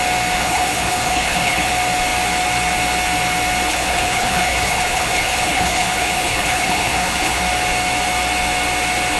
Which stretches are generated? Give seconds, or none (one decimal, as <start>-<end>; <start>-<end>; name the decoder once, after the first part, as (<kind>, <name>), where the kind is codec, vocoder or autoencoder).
0.4-1.7 (codec, HILCodec); 3.7-7.4